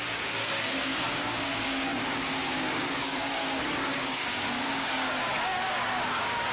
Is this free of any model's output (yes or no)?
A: no